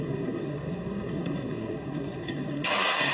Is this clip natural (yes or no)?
no